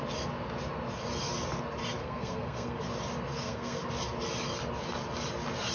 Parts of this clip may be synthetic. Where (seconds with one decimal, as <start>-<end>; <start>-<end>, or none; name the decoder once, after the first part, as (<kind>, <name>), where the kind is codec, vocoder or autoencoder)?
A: 2.0-2.8 (codec, SNAC); 3.3-3.9